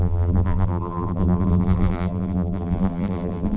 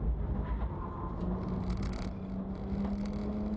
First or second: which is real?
second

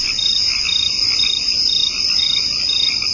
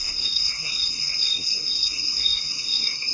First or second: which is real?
first